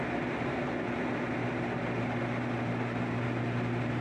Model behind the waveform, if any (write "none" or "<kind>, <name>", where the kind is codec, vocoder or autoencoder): vocoder, BigVGAN v2